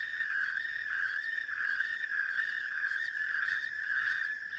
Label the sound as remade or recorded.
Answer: remade